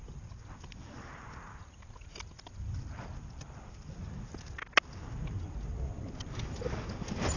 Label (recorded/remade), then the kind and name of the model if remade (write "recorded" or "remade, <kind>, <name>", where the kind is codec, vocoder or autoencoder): recorded